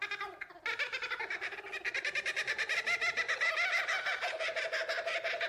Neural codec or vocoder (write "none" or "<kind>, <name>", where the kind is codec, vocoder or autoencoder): none